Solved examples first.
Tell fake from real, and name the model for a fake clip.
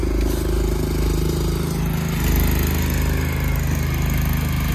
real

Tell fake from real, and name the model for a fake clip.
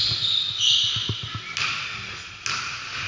real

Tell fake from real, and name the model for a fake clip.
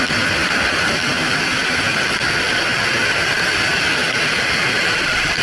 real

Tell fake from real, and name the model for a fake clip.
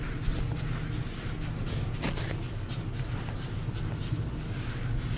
real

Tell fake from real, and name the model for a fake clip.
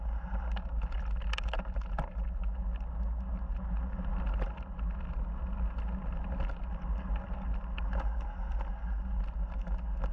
real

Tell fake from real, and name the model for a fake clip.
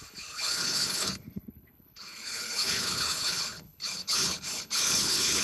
fake, codec, HILCodec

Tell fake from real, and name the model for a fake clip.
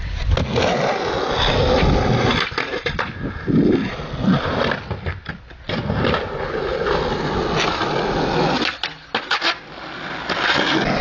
real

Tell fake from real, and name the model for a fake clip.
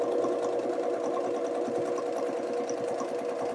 real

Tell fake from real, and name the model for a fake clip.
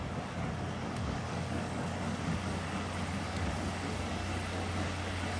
fake, codec, DAC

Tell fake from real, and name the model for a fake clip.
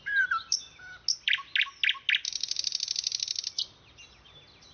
real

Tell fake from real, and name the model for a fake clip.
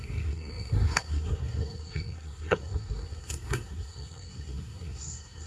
fake, codec, SNAC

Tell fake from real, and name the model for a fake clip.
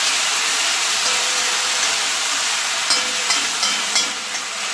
real